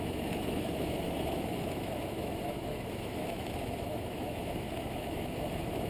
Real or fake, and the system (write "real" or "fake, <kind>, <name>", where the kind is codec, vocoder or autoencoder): fake, autoencoder, DAC-VAE